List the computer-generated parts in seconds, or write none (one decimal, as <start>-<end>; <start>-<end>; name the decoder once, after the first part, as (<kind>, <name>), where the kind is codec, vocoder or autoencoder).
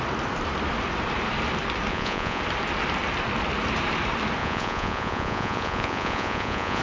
1.9-2.4 (vocoder, Vocos); 4.4-6.8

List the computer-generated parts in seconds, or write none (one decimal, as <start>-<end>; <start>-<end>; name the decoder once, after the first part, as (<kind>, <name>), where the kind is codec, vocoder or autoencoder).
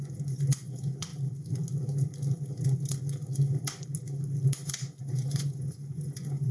0.0-1.1 (vocoder, Vocos); 5.0-6.5